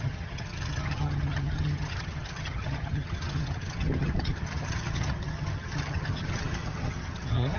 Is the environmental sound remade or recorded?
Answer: remade